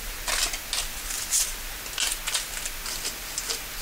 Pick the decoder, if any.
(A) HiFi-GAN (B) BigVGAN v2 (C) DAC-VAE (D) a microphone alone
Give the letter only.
D